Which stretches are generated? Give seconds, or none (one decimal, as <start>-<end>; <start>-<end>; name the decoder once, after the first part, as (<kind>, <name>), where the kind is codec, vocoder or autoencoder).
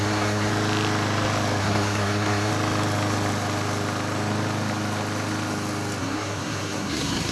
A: 0.0-0.5 (codec, SNAC); 1.6-2.5; 6.0-7.3